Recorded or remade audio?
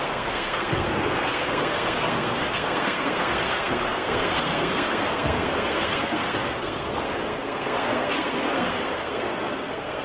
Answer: remade